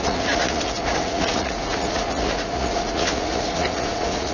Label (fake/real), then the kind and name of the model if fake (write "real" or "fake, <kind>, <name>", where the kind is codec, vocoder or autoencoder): fake, vocoder, Vocos